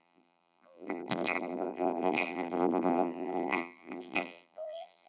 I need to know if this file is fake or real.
fake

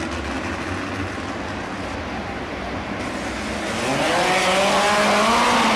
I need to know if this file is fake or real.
real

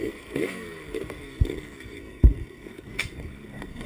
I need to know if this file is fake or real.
fake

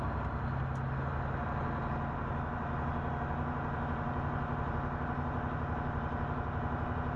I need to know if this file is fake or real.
real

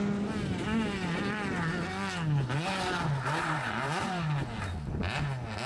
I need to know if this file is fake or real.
real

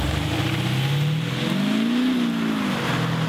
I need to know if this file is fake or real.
real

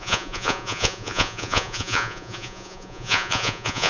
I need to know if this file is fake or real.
fake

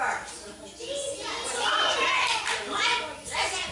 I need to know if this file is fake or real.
real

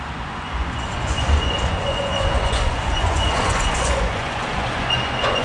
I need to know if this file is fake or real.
fake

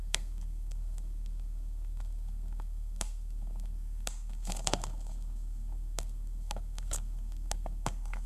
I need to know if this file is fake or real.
fake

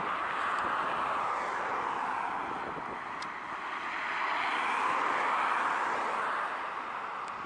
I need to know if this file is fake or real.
real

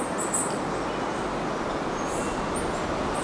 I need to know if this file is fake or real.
real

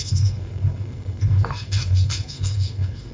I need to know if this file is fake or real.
fake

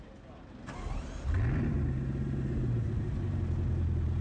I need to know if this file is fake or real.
real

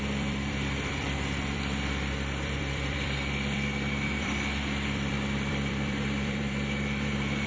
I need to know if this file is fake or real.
fake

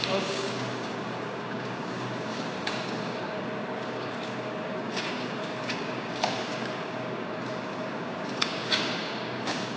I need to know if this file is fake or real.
fake